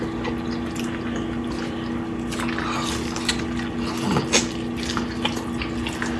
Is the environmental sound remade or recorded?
recorded